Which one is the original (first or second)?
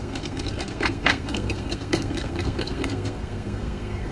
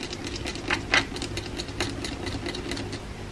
second